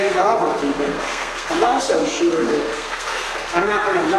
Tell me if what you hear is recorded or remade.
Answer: remade